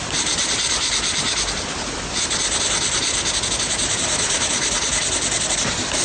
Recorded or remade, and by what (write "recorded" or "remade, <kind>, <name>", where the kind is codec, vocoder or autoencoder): recorded